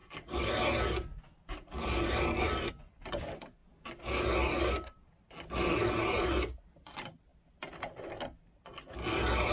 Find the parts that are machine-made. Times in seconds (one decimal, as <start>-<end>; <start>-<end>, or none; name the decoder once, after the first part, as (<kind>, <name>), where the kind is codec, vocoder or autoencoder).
none